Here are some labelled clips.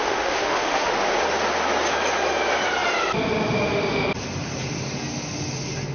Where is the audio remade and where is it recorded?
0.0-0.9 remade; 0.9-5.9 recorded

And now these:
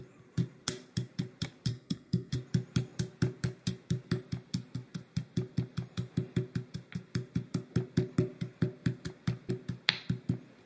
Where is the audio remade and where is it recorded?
0.0-1.7 recorded; 1.7-2.3 remade; 2.3-10.7 recorded

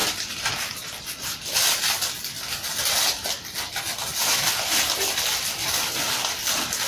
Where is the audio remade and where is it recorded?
0.0-1.0 remade; 1.0-5.6 recorded; 5.6-6.5 remade; 6.5-6.9 recorded

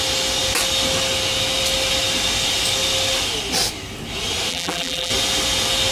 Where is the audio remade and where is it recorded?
0.0-4.5 recorded; 4.5-5.1 remade; 5.1-5.9 recorded

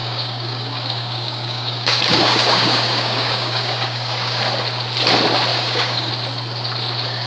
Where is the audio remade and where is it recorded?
0.0-4.4 remade; 4.4-5.5 recorded; 5.5-6.1 remade; 6.1-7.3 recorded

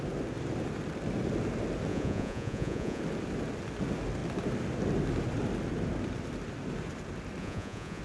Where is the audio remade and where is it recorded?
0.0-1.9 recorded; 1.9-3.0 remade; 3.0-7.4 recorded; 7.4-8.0 remade

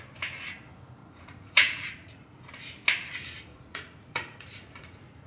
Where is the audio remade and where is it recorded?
0.0-1.0 recorded; 1.0-2.5 remade; 2.5-3.5 recorded; 3.5-5.3 remade